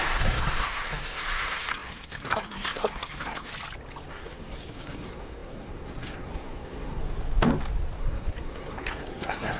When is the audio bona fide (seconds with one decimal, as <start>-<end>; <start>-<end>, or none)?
3.5-4.1; 7.0-8.0